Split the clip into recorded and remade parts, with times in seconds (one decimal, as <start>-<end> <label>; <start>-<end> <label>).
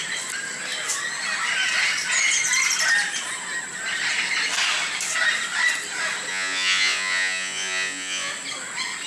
0.0-6.3 recorded; 6.3-8.3 remade; 8.3-9.1 recorded